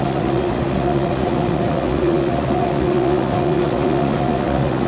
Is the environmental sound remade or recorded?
remade